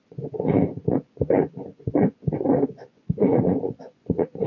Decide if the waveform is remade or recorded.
remade